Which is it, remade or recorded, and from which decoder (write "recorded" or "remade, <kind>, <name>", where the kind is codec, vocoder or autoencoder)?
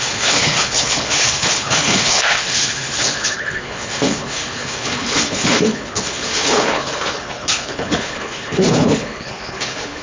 remade, codec, HILCodec